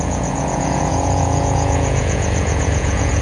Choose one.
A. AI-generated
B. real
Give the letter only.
A